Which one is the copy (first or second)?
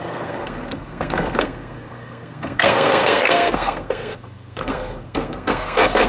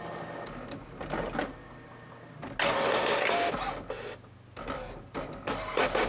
first